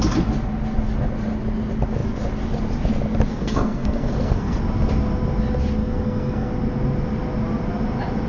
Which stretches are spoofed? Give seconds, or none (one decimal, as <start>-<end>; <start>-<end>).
3.3-4.6; 5.8-6.5